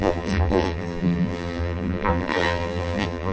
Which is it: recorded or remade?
remade